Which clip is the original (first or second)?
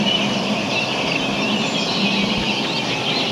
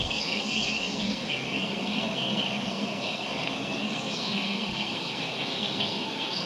first